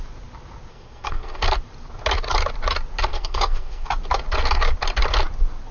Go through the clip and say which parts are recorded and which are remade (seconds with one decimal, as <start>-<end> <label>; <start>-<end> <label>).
0.0-0.7 recorded; 0.7-1.4 remade; 1.4-3.1 recorded; 3.1-3.9 remade; 3.9-5.7 recorded